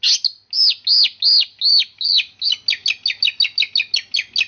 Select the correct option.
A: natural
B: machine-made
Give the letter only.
A